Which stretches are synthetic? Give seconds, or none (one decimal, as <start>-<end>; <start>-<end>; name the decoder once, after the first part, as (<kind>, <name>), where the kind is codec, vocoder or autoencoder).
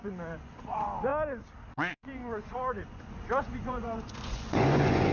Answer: 0.0-1.1 (vocoder, Vocos); 1.7-5.1